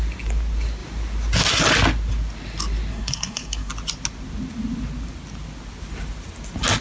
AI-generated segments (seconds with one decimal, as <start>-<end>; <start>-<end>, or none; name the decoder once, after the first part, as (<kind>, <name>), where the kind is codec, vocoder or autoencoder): 2.9-3.7 (codec, SNAC)